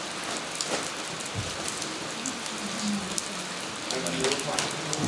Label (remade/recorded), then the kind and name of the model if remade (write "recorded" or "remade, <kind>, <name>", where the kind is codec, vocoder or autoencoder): recorded